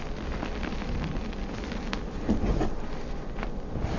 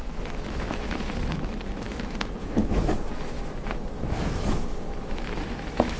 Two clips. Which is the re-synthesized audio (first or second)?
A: second